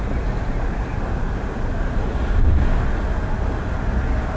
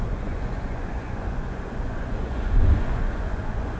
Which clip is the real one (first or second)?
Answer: first